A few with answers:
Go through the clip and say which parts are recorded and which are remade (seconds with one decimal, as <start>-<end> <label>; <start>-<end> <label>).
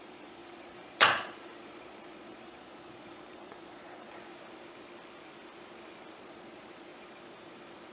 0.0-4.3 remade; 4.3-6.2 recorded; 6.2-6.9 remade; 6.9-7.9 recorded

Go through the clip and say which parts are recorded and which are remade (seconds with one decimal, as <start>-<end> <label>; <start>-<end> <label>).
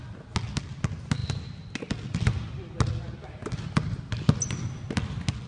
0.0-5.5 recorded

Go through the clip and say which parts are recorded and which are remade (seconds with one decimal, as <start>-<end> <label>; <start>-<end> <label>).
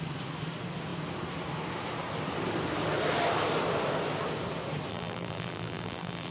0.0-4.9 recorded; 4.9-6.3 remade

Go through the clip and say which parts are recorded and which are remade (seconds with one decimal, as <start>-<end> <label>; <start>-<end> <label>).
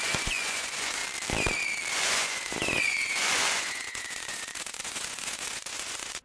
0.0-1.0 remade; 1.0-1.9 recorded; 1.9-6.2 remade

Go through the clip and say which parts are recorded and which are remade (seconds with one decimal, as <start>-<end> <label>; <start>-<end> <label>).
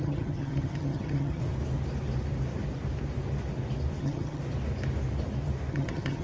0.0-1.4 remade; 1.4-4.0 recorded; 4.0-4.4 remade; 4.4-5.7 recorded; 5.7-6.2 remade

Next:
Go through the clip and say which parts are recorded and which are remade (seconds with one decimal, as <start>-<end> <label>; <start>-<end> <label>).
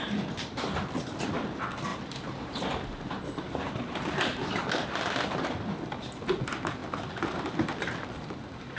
0.0-1.9 recorded; 1.9-5.5 remade; 5.5-8.8 recorded